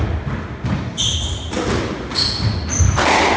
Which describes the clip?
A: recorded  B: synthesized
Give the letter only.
A